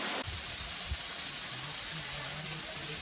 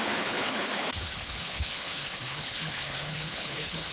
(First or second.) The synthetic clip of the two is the second